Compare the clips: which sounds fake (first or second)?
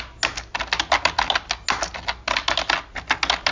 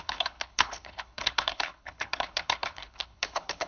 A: second